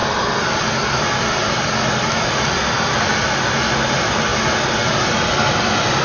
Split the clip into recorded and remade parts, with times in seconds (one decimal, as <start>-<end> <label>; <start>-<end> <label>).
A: 0.0-6.0 recorded